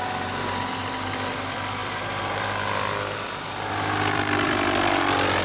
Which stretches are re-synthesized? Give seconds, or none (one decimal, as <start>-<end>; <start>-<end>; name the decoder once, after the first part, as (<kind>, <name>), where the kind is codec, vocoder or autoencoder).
1.8-5.0 (vocoder, BigVGAN v2)

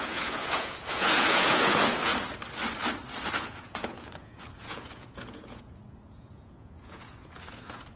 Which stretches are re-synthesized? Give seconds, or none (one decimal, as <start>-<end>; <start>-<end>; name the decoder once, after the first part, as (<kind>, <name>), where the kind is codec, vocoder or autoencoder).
0.0-2.1 (vocoder, Vocos); 3.4-8.0

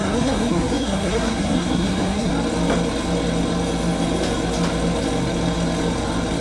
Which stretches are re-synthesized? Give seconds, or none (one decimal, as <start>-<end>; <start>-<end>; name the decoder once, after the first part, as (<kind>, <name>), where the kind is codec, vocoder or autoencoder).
0.0-2.3 (codec, SNAC)

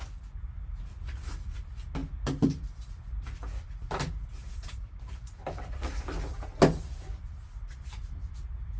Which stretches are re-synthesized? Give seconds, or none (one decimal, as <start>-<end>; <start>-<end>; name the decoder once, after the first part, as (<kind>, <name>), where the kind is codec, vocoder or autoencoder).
none

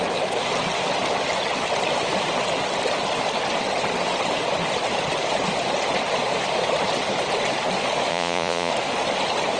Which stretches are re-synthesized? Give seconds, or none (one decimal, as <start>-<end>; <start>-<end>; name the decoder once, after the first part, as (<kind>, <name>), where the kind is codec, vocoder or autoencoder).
8.1-8.7 (vocoder, Vocos)

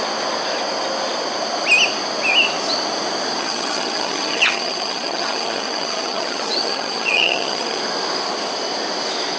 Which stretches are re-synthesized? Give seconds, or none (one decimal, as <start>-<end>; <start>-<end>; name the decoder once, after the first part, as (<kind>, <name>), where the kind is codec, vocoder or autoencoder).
3.4-7.8 (vocoder, HiFi-GAN)

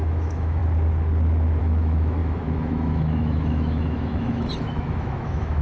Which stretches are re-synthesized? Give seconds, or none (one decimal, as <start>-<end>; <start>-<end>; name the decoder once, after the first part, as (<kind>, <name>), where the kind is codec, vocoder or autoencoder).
0.0-0.6 (autoencoder, DAC-VAE); 1.6-5.6

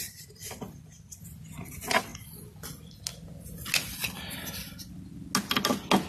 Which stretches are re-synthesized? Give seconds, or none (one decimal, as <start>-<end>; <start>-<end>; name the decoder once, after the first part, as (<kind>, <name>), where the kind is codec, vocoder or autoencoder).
none